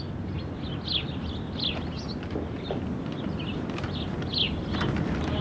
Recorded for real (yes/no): yes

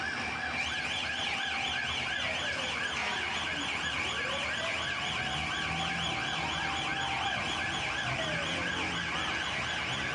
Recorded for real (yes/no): yes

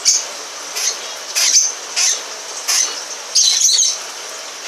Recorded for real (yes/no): yes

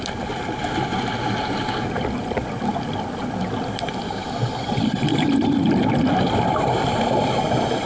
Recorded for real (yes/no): yes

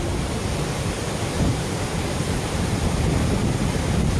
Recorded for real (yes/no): yes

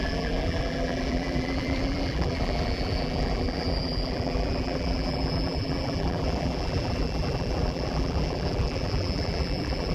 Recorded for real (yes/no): no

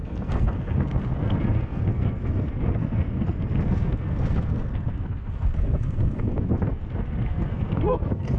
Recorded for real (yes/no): no